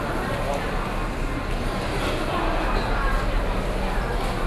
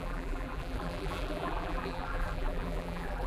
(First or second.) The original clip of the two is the first